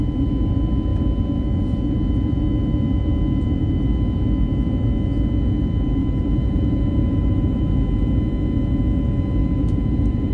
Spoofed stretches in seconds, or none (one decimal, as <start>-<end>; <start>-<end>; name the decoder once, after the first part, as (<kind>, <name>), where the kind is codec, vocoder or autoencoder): 6.0-7.6 (vocoder, BigVGAN v2); 9.4-10.3